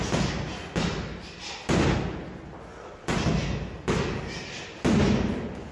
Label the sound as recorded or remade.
recorded